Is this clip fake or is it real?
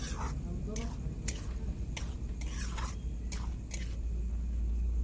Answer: real